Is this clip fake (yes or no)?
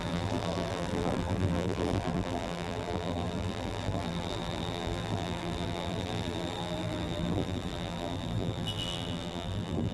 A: yes